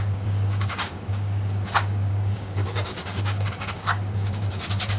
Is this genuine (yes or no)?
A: no